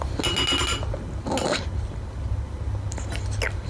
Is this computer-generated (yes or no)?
no